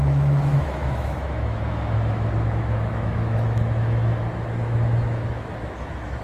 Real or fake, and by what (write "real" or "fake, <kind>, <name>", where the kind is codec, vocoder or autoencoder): fake, autoencoder, DAC-VAE